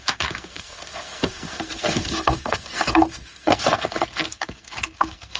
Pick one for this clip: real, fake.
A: fake